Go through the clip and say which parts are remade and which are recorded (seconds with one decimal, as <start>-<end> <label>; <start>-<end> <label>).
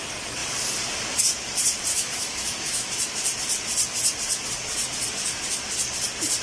0.0-1.9 recorded; 1.9-2.9 remade; 2.9-6.4 recorded